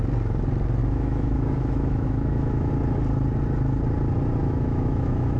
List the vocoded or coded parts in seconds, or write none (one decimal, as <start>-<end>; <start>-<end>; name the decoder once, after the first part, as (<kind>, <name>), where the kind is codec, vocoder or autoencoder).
0.8-2.7 (autoencoder, DAC-VAE); 4.4-5.4